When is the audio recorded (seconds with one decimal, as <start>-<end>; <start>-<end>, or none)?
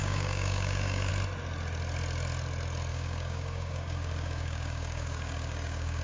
1.1-2.9